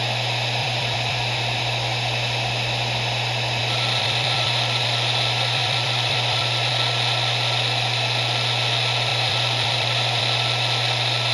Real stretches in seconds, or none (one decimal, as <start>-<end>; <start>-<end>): 0.0-0.6; 1.6-3.6; 6.7-9.1; 10.2-11.3